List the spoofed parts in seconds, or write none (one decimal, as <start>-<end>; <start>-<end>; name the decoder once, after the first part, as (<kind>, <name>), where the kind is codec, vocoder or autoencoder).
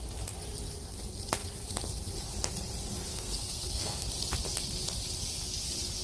3.1-4.1 (codec, SNAC)